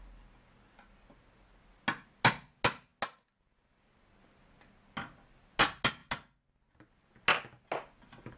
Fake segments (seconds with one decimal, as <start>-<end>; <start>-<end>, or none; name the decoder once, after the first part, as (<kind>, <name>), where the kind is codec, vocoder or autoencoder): none